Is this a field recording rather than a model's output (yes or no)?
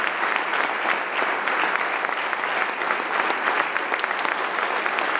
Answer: yes